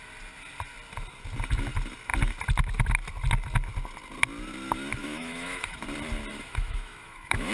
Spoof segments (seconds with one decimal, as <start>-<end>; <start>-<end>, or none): 5.0-5.8; 6.3-7.5

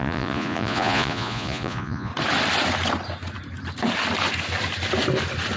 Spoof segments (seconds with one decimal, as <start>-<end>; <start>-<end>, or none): 0.0-2.1

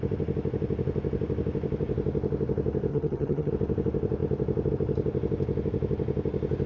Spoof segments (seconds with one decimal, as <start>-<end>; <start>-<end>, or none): 2.9-3.5